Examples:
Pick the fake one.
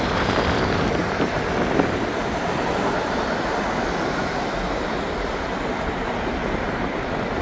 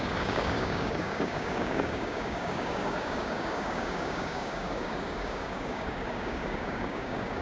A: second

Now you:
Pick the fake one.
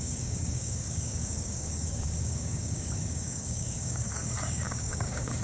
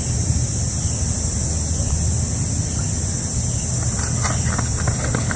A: first